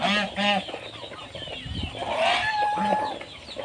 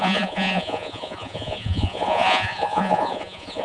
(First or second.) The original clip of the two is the first